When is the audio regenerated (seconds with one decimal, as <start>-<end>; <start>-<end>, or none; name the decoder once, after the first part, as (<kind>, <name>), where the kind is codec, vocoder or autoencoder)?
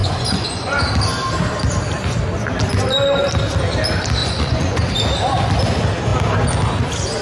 0.0-0.9 (vocoder, Vocos); 4.2-4.9